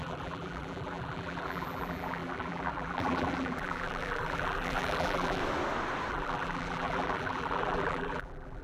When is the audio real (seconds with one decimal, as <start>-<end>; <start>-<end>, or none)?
5.4-6.1